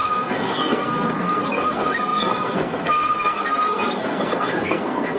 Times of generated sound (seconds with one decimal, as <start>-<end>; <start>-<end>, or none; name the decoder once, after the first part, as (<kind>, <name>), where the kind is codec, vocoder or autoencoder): 0.0-5.2 (codec, SNAC)